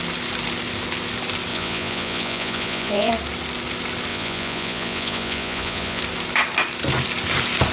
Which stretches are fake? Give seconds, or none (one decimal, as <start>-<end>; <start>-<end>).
1.5-3.1; 4.1-6.0